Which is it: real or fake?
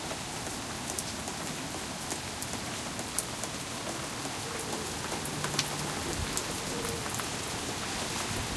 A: real